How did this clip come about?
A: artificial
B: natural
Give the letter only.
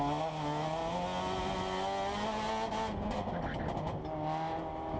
B